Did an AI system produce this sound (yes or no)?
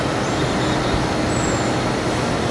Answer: no